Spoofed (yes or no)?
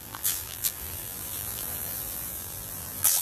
yes